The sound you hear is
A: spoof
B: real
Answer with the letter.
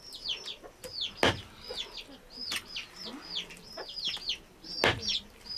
B